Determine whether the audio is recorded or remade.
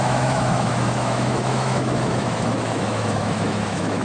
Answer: remade